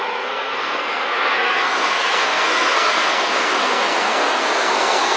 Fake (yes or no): yes